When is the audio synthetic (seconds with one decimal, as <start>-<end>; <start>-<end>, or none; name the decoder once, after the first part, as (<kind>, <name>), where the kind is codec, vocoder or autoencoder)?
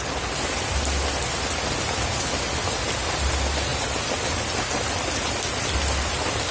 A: none